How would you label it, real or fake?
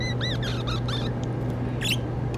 real